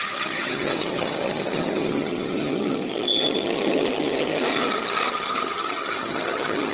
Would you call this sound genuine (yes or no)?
no